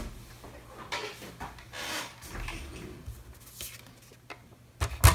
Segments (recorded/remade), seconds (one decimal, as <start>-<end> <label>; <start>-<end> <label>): 0.0-5.1 recorded